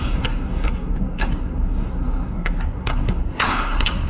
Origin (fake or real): fake